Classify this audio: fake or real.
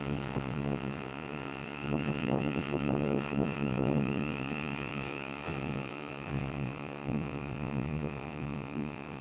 fake